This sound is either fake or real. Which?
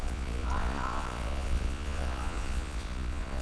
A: fake